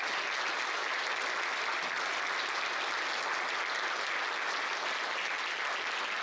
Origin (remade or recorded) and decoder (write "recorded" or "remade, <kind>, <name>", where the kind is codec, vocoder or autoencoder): recorded